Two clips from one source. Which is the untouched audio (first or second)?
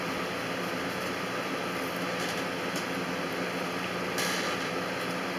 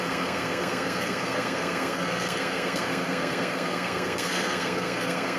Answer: first